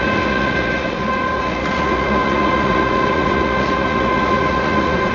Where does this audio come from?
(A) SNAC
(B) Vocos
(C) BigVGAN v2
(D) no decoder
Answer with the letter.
B